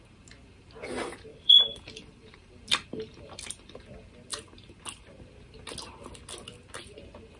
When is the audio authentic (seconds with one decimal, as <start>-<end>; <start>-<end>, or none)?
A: 0.0-1.3; 3.8-7.4